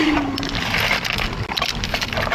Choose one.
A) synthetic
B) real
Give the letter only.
B